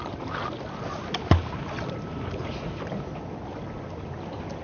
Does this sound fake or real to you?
real